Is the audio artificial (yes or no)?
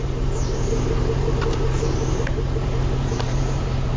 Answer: yes